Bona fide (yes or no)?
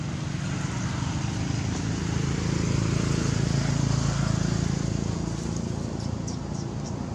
yes